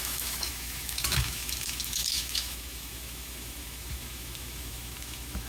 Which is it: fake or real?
fake